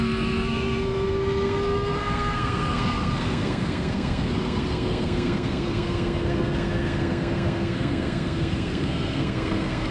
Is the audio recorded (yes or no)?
no